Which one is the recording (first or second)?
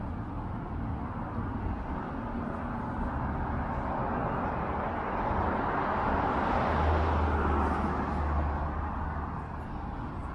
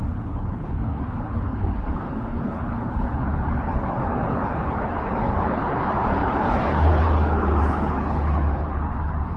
first